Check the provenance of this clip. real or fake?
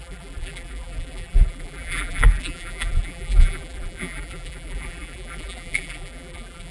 fake